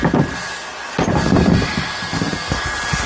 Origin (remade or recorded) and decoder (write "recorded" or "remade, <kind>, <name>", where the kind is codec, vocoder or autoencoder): recorded